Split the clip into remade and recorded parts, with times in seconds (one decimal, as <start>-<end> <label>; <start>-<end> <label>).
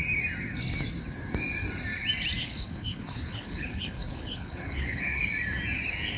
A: 0.0-2.4 recorded; 2.4-5.2 remade; 5.2-6.2 recorded